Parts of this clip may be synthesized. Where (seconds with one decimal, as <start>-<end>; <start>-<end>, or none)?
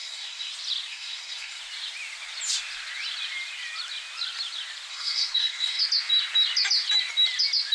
0.0-0.5; 0.9-1.6; 4.9-5.8